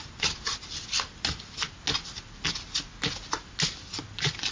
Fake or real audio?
real